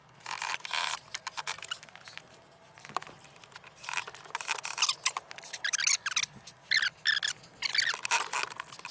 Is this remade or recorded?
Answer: recorded